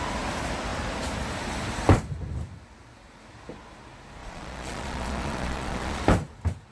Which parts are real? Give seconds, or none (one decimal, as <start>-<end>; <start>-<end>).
0.0-4.2; 6.0-6.7